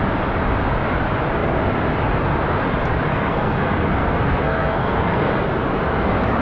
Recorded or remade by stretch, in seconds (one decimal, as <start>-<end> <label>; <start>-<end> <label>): 0.0-3.1 recorded; 3.1-5.3 remade; 5.3-6.4 recorded

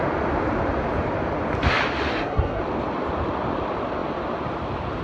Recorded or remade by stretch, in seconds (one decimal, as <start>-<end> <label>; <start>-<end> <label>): 0.0-2.1 recorded; 2.1-2.6 remade; 2.6-5.0 recorded

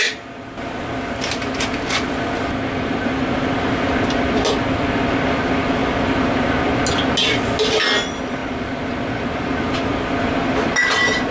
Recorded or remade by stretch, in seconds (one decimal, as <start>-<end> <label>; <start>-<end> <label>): 0.0-11.3 recorded

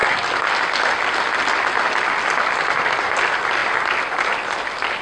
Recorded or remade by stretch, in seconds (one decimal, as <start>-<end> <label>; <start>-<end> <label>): 0.0-5.0 recorded